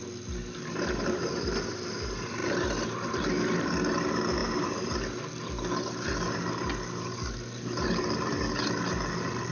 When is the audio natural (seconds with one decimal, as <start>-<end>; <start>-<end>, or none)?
0.0-9.5